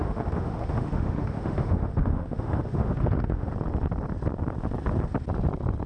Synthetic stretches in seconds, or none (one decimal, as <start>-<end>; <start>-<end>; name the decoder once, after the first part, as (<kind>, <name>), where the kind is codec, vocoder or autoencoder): 0.0-3.5 (autoencoder, DAC-VAE)